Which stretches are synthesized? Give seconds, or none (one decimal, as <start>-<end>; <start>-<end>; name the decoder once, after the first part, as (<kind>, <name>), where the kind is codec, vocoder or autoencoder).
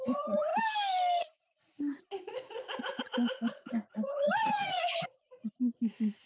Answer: 0.0-0.5 (vocoder, Vocos); 1.2-6.3